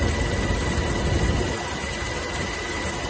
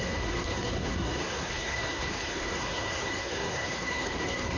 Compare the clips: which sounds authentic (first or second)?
first